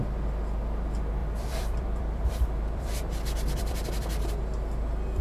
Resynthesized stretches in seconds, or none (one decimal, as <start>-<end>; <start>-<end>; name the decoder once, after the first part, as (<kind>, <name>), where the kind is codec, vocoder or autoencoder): 1.2-4.3 (vocoder, BigVGAN v2)